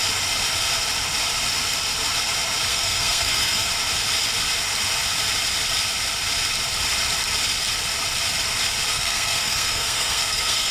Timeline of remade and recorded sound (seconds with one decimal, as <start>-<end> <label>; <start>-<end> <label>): 0.0-2.7 recorded; 2.7-3.7 remade; 3.7-8.9 recorded; 8.9-10.7 remade